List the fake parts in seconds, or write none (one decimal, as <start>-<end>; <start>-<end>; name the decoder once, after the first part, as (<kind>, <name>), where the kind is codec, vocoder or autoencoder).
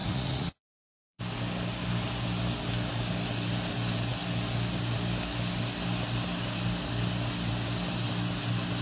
0.0-1.2 (vocoder, Vocos)